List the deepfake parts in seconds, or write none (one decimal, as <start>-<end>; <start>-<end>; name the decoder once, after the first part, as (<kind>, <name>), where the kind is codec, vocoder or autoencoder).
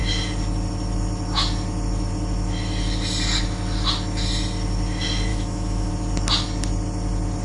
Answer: 5.3-5.9 (autoencoder, DAC-VAE)